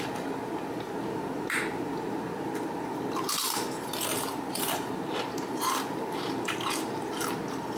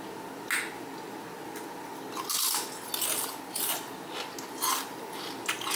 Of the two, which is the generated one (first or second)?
first